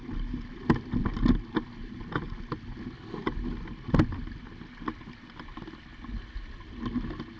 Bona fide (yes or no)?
yes